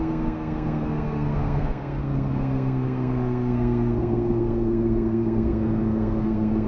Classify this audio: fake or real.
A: fake